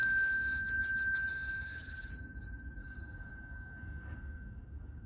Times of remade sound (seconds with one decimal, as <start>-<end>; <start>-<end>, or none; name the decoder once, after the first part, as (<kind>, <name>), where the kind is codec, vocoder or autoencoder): 0.0-0.6 (codec, DAC); 1.3-2.1; 2.8-5.1